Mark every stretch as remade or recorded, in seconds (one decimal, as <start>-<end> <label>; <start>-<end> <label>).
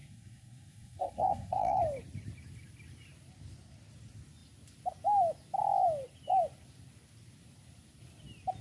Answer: 0.0-1.8 remade; 1.8-8.6 recorded